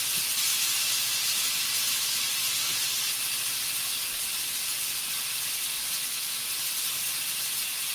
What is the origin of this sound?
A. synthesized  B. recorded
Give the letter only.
B